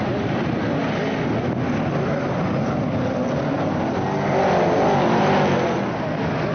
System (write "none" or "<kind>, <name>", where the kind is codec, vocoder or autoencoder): none